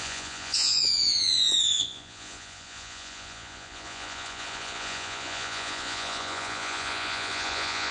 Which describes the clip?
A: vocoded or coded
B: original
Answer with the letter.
A